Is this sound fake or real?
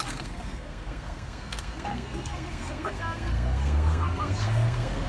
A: fake